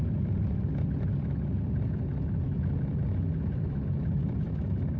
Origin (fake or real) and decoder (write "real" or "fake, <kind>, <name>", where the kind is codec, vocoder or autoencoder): real